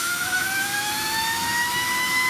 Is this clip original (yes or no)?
no